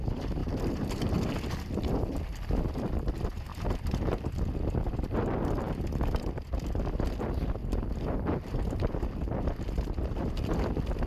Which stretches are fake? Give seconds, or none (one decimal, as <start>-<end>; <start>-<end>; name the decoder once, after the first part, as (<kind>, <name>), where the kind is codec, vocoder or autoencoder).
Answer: 3.5-4.3 (vocoder, BigVGAN v2); 7.6-8.5